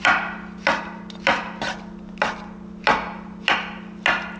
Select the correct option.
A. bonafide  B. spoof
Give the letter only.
A